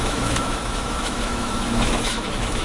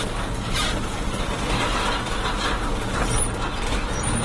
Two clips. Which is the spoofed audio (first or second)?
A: first